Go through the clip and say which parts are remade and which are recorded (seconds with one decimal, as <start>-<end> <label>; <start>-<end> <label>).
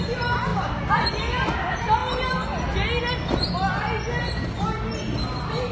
0.0-5.7 recorded